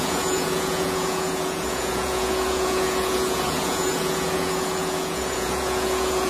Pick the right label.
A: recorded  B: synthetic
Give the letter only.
B